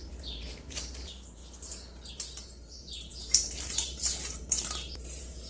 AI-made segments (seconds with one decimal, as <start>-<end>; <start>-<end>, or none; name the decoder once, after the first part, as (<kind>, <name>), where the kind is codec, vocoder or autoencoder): 0.0-1.4 (vocoder, BigVGAN v2); 2.1-5.5